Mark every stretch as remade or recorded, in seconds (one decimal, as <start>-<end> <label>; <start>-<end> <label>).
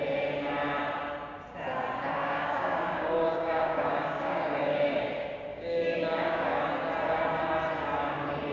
0.0-2.2 recorded; 2.2-5.1 remade; 5.1-5.5 recorded; 5.5-6.6 remade; 6.6-8.5 recorded